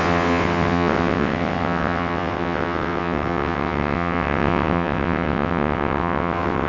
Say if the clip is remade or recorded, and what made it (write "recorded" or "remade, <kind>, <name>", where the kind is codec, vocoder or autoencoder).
remade, vocoder, WaveNeXt